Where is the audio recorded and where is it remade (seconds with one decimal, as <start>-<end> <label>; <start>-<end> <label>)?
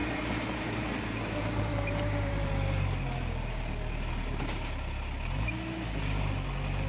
0.0-2.5 remade; 2.5-6.9 recorded